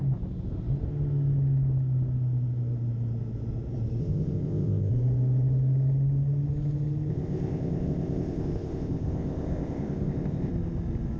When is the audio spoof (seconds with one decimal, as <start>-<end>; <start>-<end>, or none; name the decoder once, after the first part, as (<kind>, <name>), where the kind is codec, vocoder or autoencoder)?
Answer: 4.0-4.9 (codec, ZipCodec); 7.1-10.5